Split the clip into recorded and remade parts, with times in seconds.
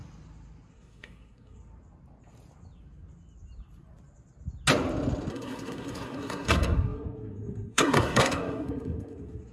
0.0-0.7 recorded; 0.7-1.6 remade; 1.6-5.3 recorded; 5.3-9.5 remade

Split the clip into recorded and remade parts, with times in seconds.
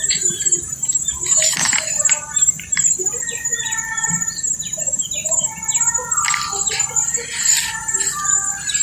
0.0-8.8 recorded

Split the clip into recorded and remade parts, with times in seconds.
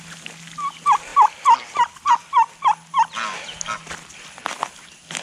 0.0-5.2 recorded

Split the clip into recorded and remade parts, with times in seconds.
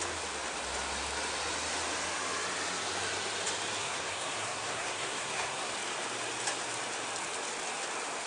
0.0-3.8 recorded; 3.8-5.7 remade; 5.7-8.3 recorded